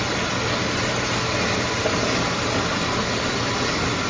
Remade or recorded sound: recorded